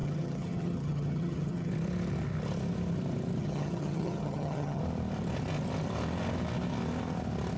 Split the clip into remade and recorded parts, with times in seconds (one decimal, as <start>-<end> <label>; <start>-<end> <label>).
0.0-1.7 remade; 1.7-3.4 recorded; 3.4-4.8 remade; 4.8-7.6 recorded